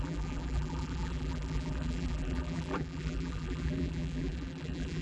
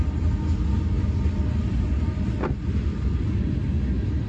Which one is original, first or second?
second